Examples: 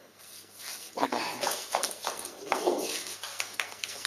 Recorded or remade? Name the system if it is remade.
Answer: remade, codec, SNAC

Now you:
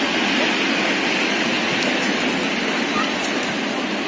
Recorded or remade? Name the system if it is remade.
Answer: recorded